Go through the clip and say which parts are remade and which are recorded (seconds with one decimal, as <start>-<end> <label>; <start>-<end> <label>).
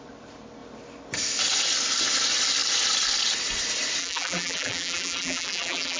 0.0-4.0 recorded; 4.0-6.0 remade